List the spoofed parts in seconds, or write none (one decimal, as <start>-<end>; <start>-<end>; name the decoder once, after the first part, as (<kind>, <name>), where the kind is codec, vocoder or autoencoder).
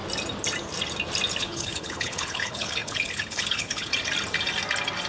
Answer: 1.4-3.9 (codec, HILCodec)